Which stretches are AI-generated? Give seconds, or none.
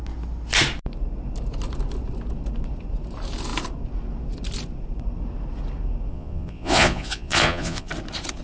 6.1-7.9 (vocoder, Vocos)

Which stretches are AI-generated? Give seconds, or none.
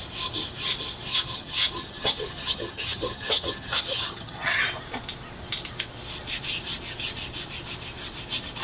1.1-4.6 (vocoder, HiFi-GAN)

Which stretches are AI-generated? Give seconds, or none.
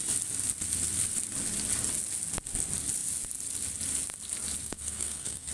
4.6-5.5 (codec, SNAC)